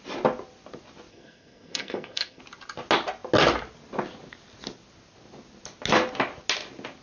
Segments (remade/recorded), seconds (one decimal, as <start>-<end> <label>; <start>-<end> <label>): 0.0-1.1 recorded; 1.1-2.4 remade; 2.4-7.0 recorded

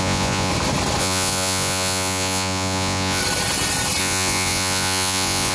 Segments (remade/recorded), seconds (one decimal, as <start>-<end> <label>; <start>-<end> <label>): 0.0-0.5 remade; 0.5-1.0 recorded; 1.0-3.2 remade; 3.2-4.0 recorded; 4.0-5.5 remade

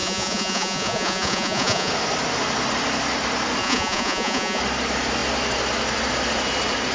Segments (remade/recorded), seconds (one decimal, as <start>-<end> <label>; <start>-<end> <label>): 0.0-1.9 remade; 1.9-3.6 recorded; 3.6-4.6 remade; 4.6-6.9 recorded